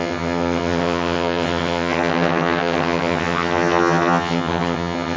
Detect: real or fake fake